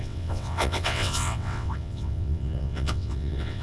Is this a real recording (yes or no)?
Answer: no